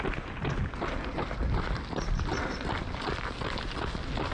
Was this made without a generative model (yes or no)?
yes